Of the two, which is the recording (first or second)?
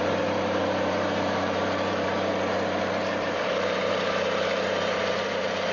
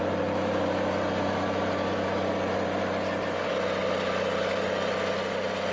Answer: second